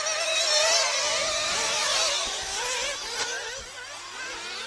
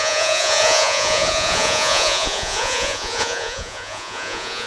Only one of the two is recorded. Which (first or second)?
first